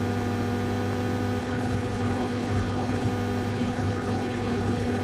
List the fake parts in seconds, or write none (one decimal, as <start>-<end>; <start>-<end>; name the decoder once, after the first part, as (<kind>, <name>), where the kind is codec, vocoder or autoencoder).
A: 1.4-3.1 (codec, HILCodec); 3.5-5.0